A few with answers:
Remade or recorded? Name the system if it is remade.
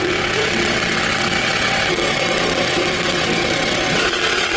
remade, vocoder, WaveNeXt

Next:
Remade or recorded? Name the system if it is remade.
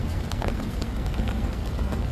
remade, codec, SNAC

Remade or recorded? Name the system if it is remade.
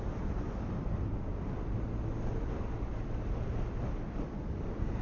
recorded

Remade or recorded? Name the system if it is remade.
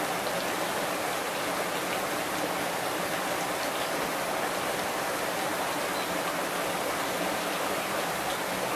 recorded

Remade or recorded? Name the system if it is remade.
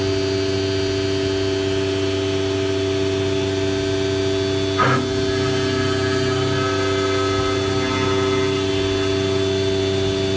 recorded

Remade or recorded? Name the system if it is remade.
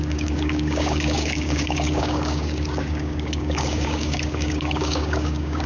remade, codec, DAC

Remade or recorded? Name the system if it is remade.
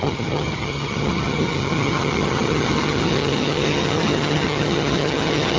remade, vocoder, HiFi-GAN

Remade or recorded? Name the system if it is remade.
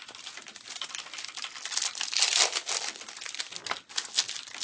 recorded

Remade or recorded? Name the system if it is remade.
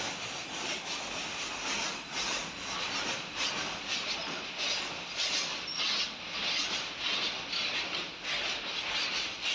recorded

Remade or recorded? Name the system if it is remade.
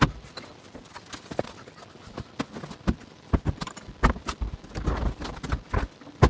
recorded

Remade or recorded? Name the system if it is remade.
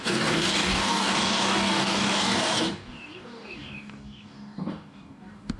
remade, codec, DAC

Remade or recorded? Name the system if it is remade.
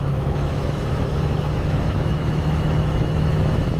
remade, autoencoder, DAC-VAE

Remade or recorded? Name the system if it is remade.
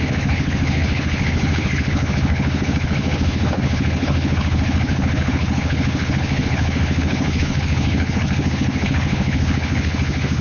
remade, codec, HILCodec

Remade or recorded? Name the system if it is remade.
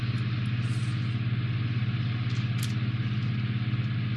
recorded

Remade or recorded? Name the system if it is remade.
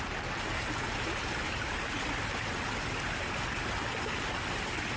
recorded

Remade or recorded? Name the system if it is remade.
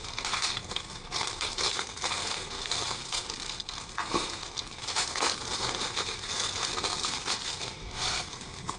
remade, codec, SNAC